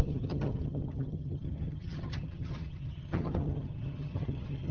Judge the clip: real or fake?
fake